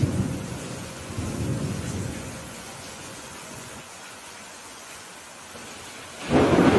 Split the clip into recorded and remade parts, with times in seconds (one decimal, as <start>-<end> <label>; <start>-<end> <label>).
0.0-1.1 remade; 1.1-1.5 recorded; 1.5-5.1 remade; 5.1-6.8 recorded